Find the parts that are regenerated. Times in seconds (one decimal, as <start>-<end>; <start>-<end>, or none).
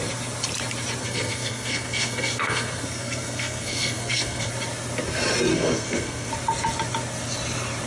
1.0-4.5; 5.5-6.3